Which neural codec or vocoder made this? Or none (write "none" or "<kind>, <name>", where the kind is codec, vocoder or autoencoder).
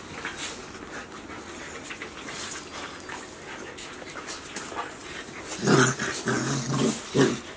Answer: none